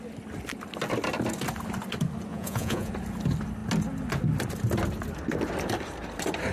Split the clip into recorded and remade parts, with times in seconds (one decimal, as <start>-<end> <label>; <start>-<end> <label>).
0.0-2.3 recorded; 2.3-2.9 remade; 2.9-6.5 recorded